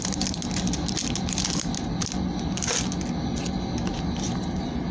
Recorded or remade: recorded